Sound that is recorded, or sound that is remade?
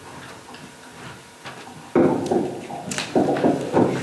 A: recorded